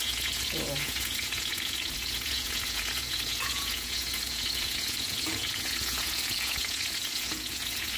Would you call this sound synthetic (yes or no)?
yes